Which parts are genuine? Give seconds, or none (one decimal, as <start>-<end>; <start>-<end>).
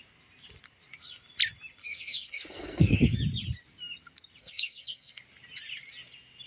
0.0-1.8; 3.2-4.4; 5.2-6.5